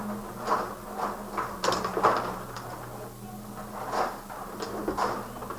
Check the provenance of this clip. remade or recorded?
recorded